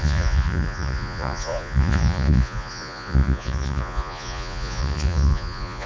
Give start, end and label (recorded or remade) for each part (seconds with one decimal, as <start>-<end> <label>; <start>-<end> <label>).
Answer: 0.0-5.9 remade